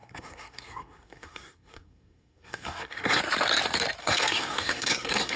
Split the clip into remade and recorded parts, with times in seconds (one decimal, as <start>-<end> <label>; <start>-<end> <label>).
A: 0.0-3.2 remade; 3.2-4.0 recorded; 4.0-5.4 remade